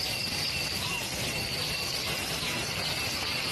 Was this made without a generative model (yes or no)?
yes